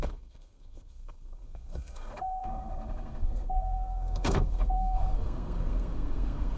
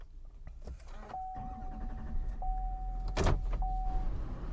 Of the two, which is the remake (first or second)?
first